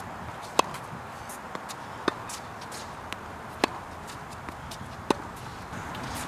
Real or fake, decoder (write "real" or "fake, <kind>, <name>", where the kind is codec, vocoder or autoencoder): real